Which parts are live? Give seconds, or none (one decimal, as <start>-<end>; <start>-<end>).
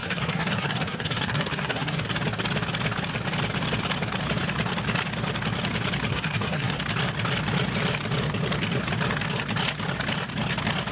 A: 2.1-6.1; 6.8-10.9